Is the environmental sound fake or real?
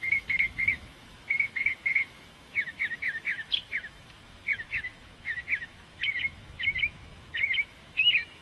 fake